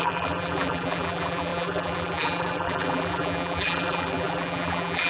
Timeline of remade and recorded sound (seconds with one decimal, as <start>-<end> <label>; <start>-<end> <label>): 0.0-5.1 remade